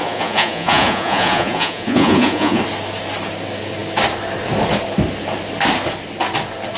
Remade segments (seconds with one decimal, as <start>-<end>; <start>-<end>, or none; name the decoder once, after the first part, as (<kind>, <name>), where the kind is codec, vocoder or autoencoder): 0.0-2.6 (vocoder, Vocos)

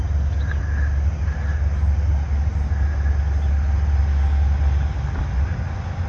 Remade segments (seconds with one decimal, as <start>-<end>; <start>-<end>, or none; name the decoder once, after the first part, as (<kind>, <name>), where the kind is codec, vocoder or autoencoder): none

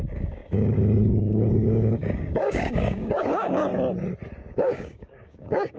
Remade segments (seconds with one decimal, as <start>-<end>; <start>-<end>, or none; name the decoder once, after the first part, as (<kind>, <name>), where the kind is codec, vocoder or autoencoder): 0.0-3.7 (codec, DAC); 4.4-5.8

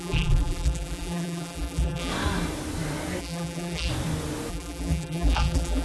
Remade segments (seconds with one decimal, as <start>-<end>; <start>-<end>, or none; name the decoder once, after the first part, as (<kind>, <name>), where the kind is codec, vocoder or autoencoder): 0.0-2.1 (vocoder, BigVGAN v2); 3.2-3.9; 4.5-5.8

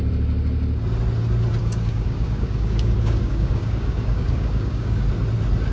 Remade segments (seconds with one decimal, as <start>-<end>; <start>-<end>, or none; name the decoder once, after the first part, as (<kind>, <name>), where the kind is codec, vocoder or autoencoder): 1.6-5.0 (codec, DAC)

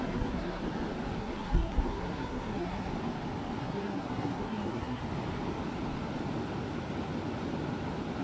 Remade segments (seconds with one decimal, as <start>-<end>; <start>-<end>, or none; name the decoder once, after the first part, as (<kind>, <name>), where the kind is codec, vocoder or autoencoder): 0.0-0.6 (codec, SNAC); 1.2-2.9; 3.6-5.0